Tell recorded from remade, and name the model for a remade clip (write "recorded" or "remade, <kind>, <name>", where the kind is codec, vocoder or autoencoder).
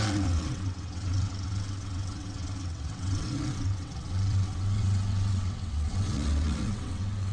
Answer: remade, vocoder, WaveNeXt